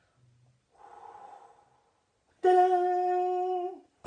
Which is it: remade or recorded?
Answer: recorded